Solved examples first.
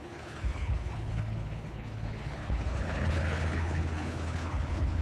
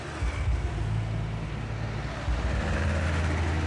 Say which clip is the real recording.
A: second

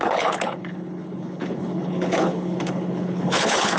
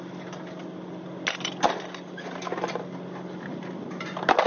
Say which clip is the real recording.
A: second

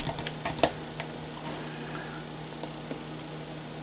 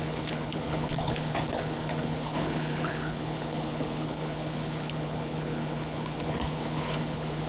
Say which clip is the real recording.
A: first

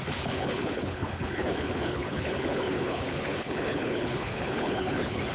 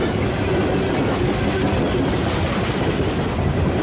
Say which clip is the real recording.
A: second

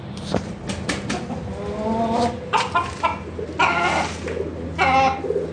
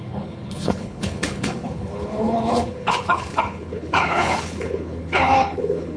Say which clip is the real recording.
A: first